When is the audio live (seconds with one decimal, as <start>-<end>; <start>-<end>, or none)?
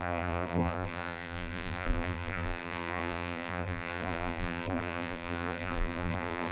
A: none